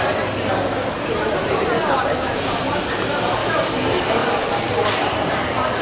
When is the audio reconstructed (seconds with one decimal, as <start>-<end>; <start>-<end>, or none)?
1.8-2.8; 4.2-5.8